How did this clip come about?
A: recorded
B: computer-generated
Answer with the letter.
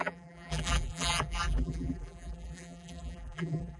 B